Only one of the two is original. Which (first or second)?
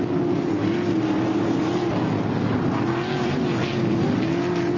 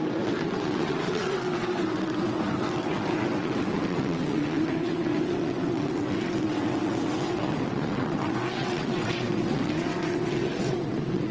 first